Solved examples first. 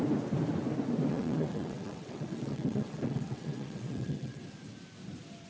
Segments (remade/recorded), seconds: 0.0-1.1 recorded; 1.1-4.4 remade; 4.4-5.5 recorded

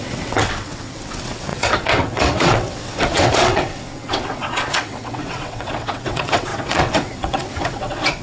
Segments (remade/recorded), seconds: 0.0-8.2 remade

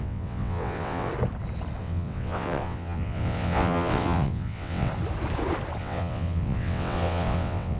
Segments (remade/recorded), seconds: 0.0-1.1 remade; 1.1-1.8 recorded; 1.8-4.9 remade; 4.9-5.8 recorded; 5.8-7.8 remade

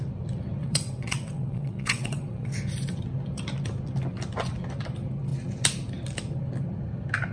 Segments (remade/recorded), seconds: 0.0-0.6 recorded; 0.6-2.5 remade; 2.5-7.3 recorded

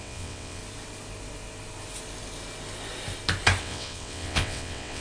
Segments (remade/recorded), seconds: 0.0-0.6 remade; 0.6-3.6 recorded; 3.6-5.0 remade

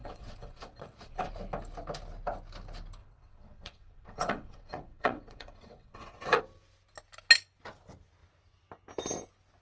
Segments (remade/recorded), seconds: 0.0-1.3 remade; 1.3-3.0 recorded; 3.0-6.4 remade; 6.4-9.6 recorded

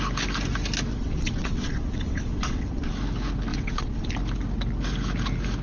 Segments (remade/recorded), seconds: 0.0-0.9 recorded; 0.9-2.9 remade; 2.9-3.5 recorded; 3.5-4.1 remade; 4.1-5.6 recorded